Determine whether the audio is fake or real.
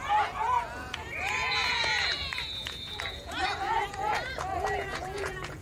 fake